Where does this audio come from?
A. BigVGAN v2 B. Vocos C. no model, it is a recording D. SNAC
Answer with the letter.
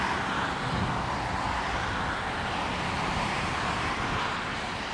A